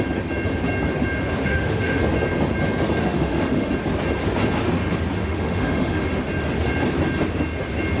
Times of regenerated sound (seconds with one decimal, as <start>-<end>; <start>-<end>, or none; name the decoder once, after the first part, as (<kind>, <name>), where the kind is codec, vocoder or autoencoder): 1.4-2.0 (autoencoder, DAC-VAE); 3.0-3.7; 5.2-6.2

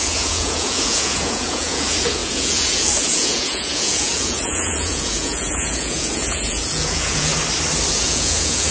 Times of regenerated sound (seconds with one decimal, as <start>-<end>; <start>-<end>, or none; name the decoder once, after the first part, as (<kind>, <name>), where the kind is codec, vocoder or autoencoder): 0.0-7.3 (vocoder, Vocos); 7.9-8.7

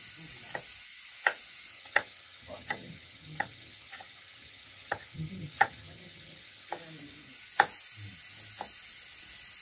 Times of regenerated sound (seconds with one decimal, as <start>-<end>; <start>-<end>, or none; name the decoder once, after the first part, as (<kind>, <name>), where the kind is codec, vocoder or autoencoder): 1.7-6.7 (vocoder, HiFi-GAN)

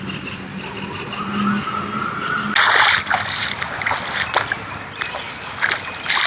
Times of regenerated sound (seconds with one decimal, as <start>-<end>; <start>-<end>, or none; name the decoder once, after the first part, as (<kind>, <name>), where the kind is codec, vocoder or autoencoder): none

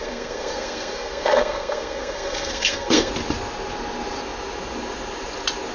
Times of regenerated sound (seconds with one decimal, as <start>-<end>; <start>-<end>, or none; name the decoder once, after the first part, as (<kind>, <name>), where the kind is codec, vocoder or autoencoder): 0.0-3.1 (codec, SNAC)

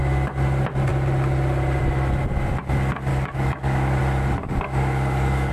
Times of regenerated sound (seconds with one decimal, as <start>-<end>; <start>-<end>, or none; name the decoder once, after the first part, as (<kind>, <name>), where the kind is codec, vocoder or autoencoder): 3.1-4.0 (codec, DAC); 4.4-5.5